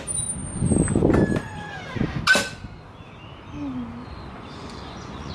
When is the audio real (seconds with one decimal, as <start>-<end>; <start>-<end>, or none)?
0.0-4.0